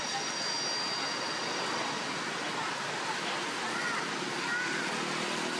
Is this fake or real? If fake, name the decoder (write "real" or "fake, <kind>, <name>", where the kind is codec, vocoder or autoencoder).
real